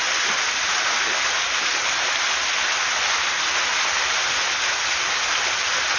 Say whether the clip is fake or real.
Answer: real